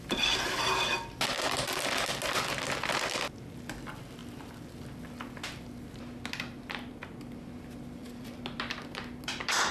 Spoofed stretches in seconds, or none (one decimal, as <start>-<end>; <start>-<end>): 8.0-9.7